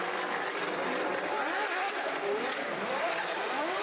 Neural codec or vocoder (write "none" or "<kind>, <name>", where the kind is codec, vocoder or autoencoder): vocoder, BigVGAN v2